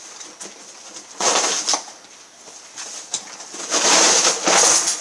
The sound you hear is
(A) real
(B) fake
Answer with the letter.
A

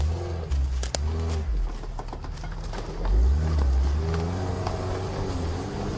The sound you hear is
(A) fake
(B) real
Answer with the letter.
B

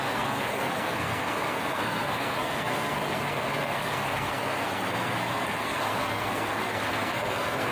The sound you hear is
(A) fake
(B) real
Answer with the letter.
A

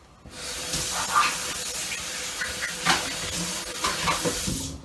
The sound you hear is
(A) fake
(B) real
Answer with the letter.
B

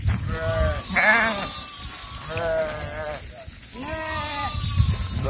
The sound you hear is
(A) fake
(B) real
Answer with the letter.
B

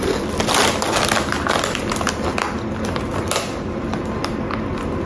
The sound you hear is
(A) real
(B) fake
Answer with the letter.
A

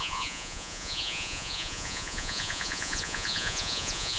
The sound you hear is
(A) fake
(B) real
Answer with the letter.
A